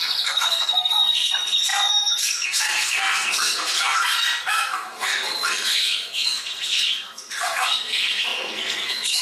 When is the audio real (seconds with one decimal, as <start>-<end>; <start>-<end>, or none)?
none